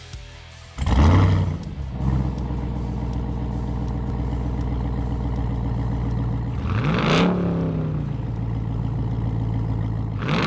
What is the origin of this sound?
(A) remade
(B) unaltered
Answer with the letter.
B